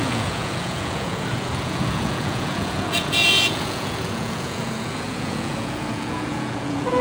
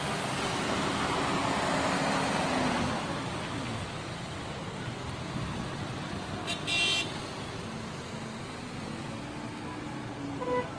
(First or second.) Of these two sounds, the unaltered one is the second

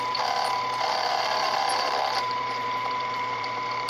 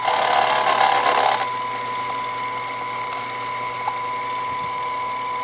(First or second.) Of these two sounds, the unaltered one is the second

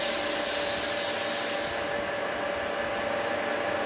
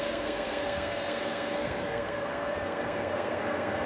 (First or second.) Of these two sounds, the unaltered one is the first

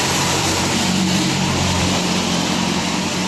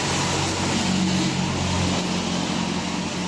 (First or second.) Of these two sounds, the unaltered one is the second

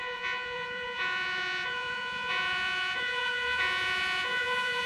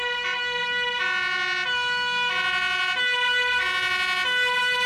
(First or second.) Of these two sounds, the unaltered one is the second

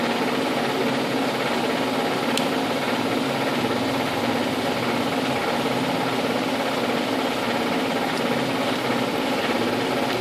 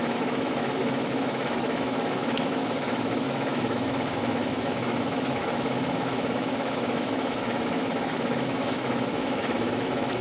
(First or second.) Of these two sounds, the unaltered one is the first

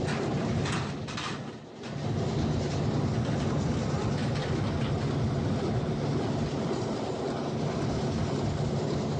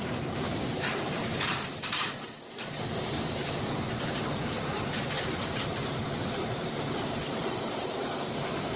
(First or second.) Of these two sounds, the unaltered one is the first